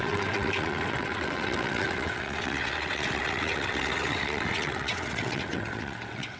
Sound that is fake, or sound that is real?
fake